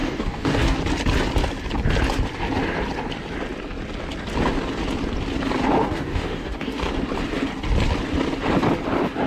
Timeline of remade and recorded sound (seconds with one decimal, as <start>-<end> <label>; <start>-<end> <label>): 0.0-0.8 remade; 0.8-5.8 recorded; 5.8-6.9 remade; 6.9-9.3 recorded